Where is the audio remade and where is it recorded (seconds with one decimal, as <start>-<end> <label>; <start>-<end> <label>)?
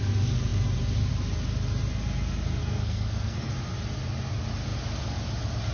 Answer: 0.0-2.6 recorded; 2.6-3.5 remade; 3.5-5.7 recorded